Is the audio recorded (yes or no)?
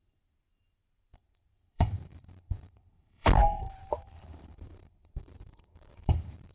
no